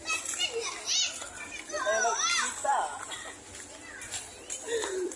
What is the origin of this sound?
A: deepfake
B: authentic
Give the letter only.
B